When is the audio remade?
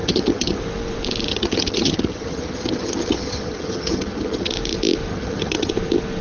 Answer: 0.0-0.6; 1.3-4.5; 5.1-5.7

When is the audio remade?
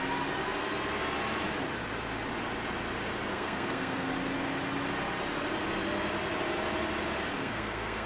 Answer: 3.3-4.1; 7.4-8.1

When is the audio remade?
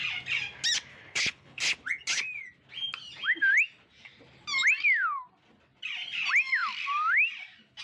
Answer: 0.9-1.6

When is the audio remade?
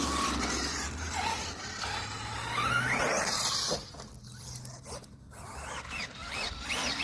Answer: none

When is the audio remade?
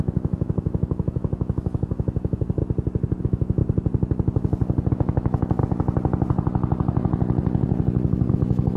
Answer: 0.0-2.6; 3.2-3.6; 4.9-5.6; 8.3-8.8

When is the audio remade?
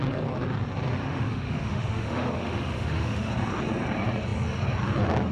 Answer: 1.0-3.3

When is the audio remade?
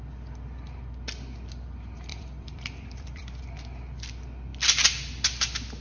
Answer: 2.1-3.4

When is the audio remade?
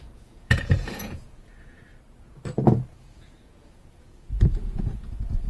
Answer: 0.0-1.9; 2.9-5.5